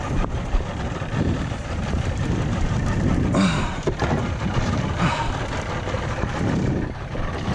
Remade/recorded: remade